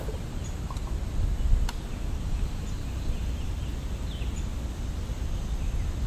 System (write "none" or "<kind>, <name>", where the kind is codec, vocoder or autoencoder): none